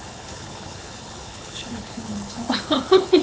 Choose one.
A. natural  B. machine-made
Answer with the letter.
B